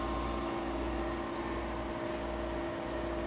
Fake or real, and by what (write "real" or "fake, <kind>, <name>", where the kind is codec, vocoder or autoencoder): real